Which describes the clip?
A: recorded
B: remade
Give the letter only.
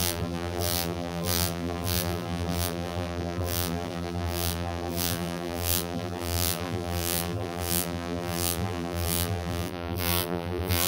B